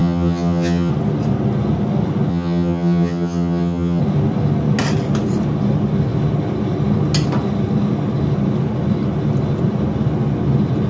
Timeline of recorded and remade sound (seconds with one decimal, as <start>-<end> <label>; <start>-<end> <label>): 0.0-0.9 remade; 0.9-2.3 recorded; 2.3-4.0 remade; 4.0-10.9 recorded